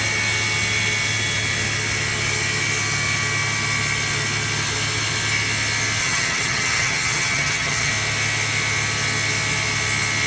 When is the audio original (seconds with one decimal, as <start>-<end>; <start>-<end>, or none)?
0.0-6.0; 7.9-10.3